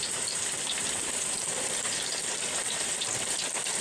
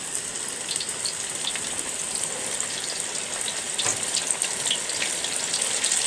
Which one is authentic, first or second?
second